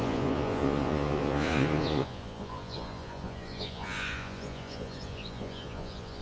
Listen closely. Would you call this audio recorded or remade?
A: remade